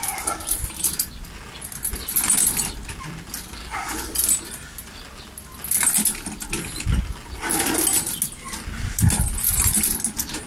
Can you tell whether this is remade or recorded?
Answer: recorded